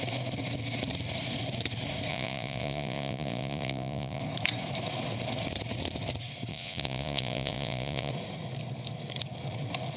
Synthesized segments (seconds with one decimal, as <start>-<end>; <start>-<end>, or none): 2.1-4.2; 6.5-8.1